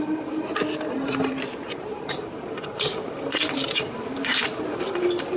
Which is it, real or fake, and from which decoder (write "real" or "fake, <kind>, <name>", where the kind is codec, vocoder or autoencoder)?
fake, vocoder, BigVGAN v2